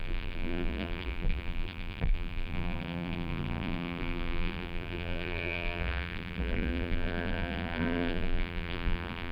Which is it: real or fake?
fake